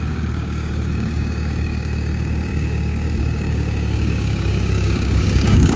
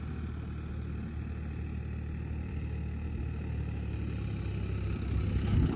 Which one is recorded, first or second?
second